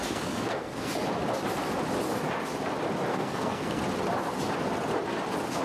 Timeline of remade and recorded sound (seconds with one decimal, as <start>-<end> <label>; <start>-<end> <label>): 0.0-0.9 remade; 0.9-3.1 recorded; 3.1-3.8 remade; 3.8-5.6 recorded

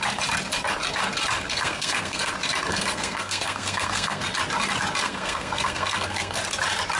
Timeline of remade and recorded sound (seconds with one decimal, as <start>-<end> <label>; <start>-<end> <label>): 0.0-1.5 recorded; 1.5-2.3 remade; 2.3-2.7 recorded; 2.7-4.2 remade; 4.2-5.0 recorded; 5.0-6.4 remade; 6.4-7.0 recorded

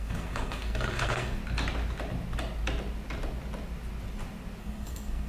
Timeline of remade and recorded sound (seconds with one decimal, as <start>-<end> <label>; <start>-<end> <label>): 0.0-1.4 remade; 1.4-4.6 recorded; 4.6-5.3 remade

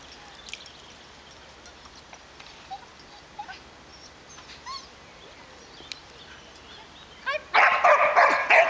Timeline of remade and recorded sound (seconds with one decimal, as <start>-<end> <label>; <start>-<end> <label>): 0.0-8.7 recorded

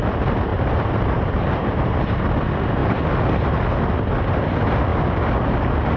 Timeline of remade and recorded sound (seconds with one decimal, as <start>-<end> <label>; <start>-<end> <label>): 0.0-0.5 recorded; 0.5-2.2 remade; 2.2-6.0 recorded